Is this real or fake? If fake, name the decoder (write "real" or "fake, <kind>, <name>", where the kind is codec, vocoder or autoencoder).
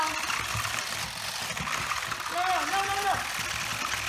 real